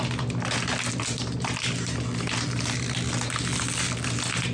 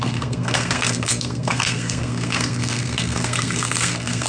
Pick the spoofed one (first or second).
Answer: second